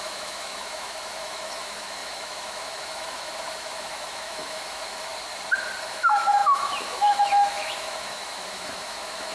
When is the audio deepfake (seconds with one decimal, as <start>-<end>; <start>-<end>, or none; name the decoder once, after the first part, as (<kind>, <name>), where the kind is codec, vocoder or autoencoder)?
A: 0.0-5.1 (autoencoder, DAC-VAE); 5.8-9.3